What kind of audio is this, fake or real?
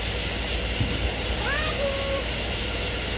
real